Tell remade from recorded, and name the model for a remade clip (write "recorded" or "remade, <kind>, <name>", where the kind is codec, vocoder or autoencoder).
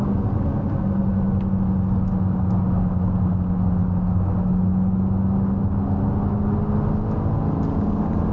recorded